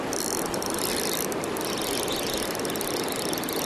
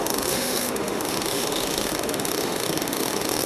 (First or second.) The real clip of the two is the first